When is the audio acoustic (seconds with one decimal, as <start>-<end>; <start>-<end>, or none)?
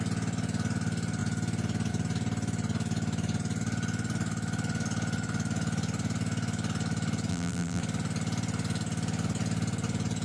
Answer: 0.0-7.3; 7.8-10.2